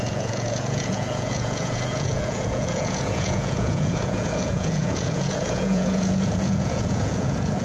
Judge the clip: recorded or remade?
remade